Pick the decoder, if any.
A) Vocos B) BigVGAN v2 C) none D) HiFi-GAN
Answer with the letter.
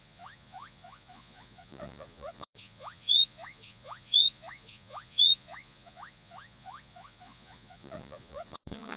A